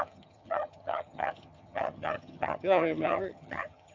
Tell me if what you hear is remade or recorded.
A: remade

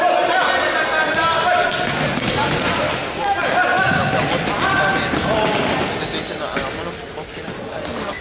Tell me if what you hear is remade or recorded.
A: recorded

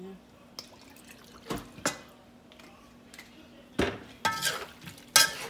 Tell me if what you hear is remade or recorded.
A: recorded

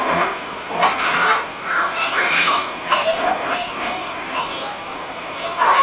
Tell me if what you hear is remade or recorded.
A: remade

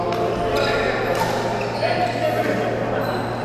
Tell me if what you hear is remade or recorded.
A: recorded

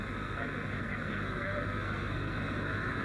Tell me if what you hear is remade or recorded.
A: remade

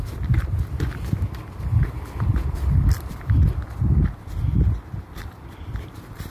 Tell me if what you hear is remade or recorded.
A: remade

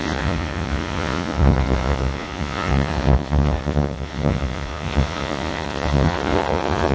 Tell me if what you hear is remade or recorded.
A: remade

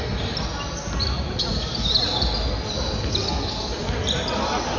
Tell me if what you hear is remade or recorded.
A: recorded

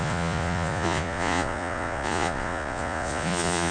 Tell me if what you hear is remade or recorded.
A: remade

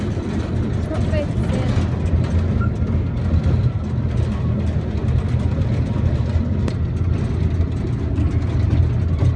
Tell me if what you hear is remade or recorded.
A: recorded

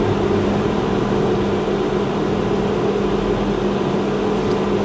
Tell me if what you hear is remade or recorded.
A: recorded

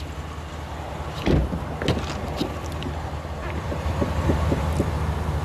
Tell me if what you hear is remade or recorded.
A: recorded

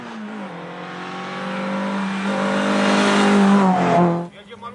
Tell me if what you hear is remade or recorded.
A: recorded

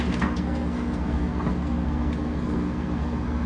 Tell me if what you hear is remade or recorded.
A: remade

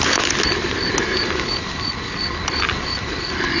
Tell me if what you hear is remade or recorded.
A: recorded